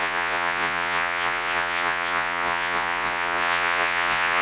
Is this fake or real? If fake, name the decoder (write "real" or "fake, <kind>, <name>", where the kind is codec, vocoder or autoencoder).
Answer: fake, vocoder, Vocos